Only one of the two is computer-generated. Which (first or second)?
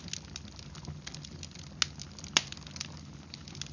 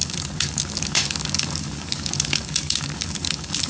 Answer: second